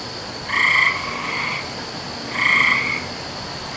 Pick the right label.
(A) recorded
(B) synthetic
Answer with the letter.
A